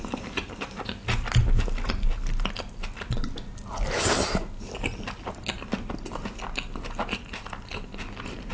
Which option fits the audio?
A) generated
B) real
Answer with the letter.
B